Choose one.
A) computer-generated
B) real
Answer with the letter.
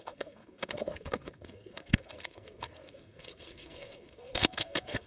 A